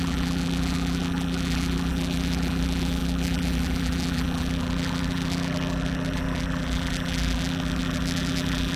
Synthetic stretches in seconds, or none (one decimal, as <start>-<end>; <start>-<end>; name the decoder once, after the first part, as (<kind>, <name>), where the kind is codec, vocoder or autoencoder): 0.0-8.8 (vocoder, BigVGAN v2)